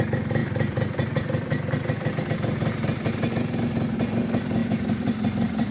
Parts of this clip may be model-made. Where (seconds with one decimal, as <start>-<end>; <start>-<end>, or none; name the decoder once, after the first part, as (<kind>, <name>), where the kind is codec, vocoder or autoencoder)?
0.4-3.3 (vocoder, BigVGAN v2); 4.6-5.7